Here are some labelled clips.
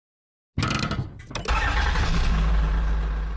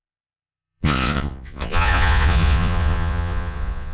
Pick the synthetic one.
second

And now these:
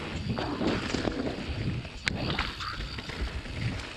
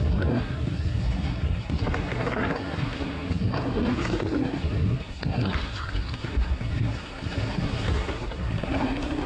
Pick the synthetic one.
second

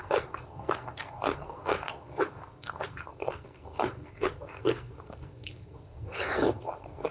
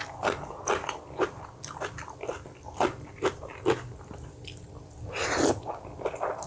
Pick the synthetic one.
first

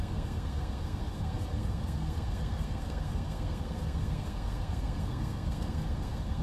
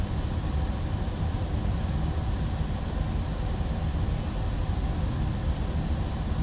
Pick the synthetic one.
first